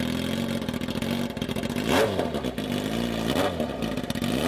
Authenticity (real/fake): real